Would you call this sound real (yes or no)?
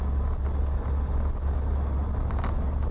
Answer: yes